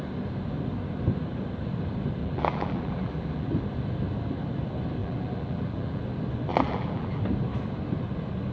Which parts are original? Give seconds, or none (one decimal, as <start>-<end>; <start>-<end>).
0.0-2.2; 3.5-5.0; 6.0-6.5; 7.2-8.5